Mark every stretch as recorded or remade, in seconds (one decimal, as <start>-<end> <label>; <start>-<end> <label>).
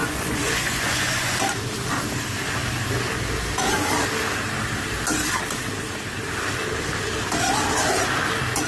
0.0-1.4 remade; 1.4-8.7 recorded